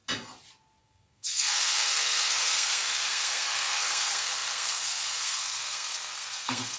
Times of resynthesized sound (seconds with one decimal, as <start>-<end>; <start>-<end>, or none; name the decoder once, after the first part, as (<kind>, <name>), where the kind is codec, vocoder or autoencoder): 0.8-6.8 (codec, SNAC)